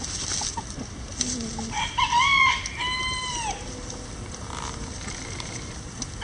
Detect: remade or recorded recorded